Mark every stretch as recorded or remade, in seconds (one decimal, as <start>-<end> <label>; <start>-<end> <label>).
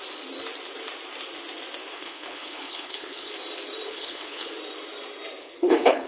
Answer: 0.0-1.9 recorded; 1.9-3.3 remade; 3.3-3.9 recorded; 3.9-4.5 remade; 4.5-5.4 recorded; 5.4-6.1 remade